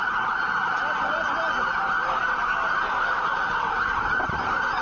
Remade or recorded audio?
recorded